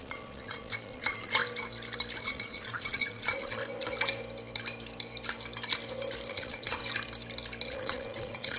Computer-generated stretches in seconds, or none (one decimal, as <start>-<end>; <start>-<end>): 0.0-1.4; 2.2-3.6; 6.3-6.8; 7.7-8.6